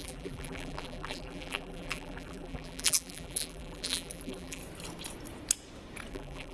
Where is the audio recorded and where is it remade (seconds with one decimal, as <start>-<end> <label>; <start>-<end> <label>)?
0.0-4.6 remade; 4.6-6.1 recorded; 6.1-6.5 remade